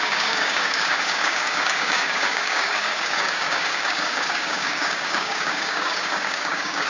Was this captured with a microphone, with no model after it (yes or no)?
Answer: no